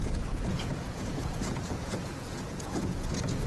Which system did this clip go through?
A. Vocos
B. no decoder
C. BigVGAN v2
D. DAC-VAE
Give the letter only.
A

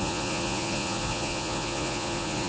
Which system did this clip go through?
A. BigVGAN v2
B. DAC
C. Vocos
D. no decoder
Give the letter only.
C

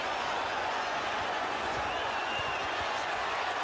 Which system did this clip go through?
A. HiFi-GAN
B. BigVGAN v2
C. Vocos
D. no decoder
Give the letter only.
C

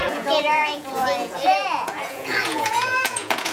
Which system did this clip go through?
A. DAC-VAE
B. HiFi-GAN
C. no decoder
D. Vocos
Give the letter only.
D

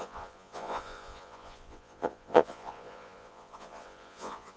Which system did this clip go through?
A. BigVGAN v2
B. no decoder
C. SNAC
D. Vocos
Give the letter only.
D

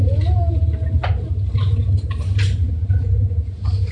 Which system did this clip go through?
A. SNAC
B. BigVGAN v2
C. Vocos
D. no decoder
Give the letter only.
D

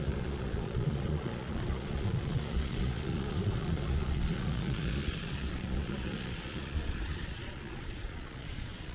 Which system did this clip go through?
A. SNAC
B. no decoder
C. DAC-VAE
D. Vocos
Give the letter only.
D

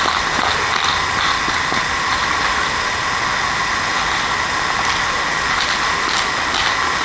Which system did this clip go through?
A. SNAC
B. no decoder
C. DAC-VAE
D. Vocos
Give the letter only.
B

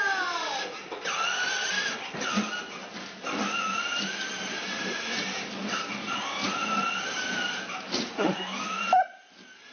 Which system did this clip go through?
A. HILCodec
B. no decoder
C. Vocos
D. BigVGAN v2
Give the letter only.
B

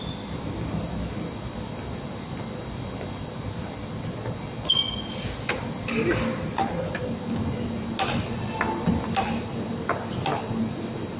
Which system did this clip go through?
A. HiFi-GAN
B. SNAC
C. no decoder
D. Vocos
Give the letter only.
C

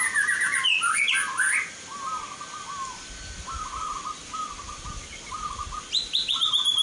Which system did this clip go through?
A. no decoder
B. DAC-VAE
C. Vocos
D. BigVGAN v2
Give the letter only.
A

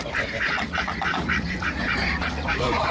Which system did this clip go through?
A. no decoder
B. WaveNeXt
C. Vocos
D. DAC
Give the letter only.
C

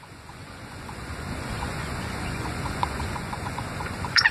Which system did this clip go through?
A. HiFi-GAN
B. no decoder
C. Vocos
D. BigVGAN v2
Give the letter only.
C